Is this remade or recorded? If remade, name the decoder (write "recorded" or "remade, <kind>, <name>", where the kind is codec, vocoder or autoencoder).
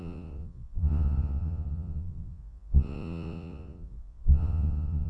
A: remade, vocoder, Vocos